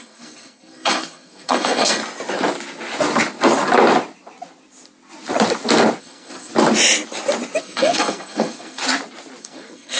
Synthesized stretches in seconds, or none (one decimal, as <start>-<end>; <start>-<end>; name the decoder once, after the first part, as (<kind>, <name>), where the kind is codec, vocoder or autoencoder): 0.0-2.0 (codec, SNAC); 6.0-6.5; 7.6-8.8; 9.4-10.0